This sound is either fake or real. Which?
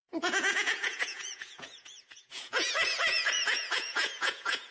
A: fake